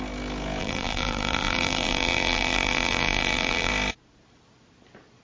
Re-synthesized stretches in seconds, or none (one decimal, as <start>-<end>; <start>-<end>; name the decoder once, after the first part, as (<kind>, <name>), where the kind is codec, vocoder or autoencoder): 0.6-3.7 (vocoder, BigVGAN v2)